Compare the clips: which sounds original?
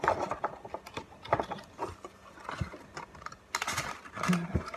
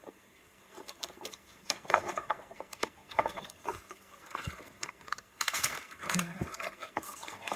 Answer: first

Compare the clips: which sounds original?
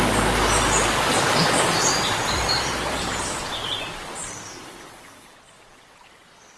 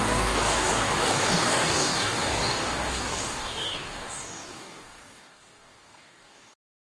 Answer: first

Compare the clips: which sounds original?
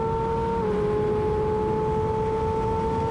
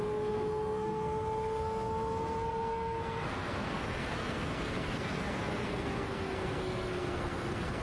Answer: first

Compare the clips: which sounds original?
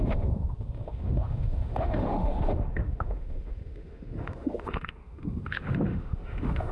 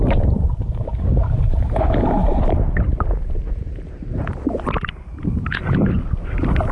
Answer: second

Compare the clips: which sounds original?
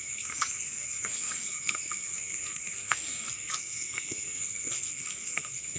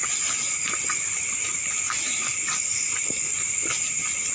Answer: second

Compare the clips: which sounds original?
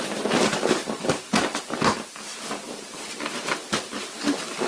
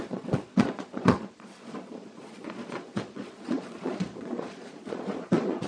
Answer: first